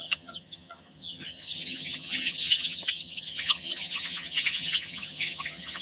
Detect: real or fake fake